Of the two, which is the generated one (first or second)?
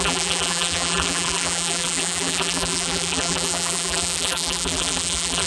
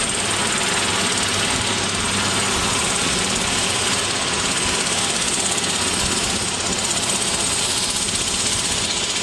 first